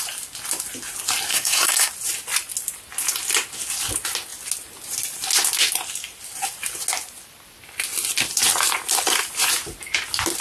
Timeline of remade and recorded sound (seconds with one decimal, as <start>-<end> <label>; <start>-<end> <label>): 0.0-1.3 recorded; 1.3-1.9 remade; 1.9-10.4 recorded